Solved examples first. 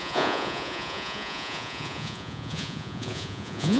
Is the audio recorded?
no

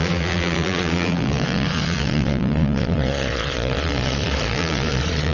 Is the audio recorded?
no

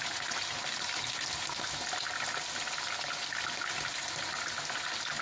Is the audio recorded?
yes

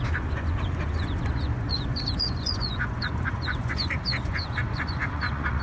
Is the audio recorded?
no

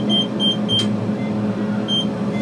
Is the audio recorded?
yes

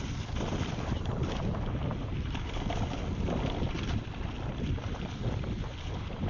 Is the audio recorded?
yes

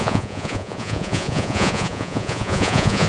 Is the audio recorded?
no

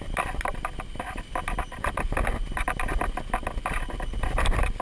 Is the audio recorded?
yes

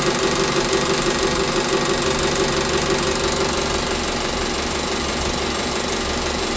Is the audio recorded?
yes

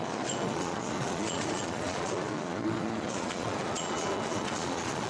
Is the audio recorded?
no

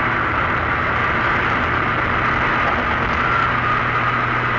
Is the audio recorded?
yes